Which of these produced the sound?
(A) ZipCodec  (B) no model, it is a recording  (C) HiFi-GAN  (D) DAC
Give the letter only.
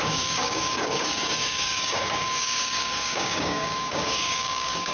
D